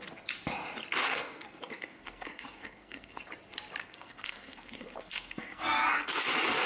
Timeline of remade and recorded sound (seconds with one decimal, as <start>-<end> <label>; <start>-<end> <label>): 0.0-1.0 recorded; 1.0-3.2 remade; 3.2-3.8 recorded; 3.8-6.2 remade; 6.2-6.7 recorded